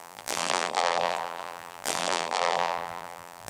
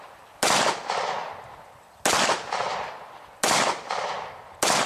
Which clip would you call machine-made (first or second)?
first